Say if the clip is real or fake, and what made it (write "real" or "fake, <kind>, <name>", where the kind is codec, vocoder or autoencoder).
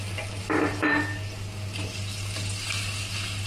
real